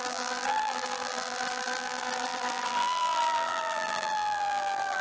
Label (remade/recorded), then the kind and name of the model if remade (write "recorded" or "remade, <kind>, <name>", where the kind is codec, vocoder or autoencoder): remade, vocoder, BigVGAN v2